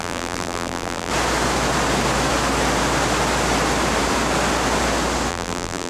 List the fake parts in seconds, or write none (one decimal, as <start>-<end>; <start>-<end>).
0.0-1.1; 5.3-5.9